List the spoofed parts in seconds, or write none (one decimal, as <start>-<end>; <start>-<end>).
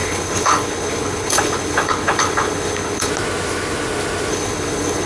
0.0-3.1; 4.3-5.1